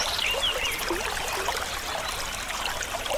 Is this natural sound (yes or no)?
yes